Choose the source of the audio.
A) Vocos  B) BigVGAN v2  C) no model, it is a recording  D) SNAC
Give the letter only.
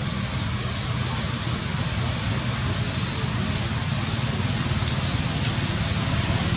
C